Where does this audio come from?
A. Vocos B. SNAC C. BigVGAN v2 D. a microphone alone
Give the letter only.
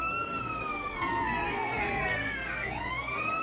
B